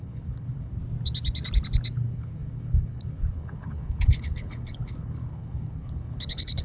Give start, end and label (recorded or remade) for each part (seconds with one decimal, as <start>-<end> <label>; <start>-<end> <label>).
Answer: 0.0-0.8 remade; 0.8-1.9 recorded; 1.9-6.6 remade